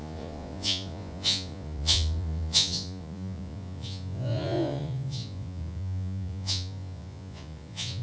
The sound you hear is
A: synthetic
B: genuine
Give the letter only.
A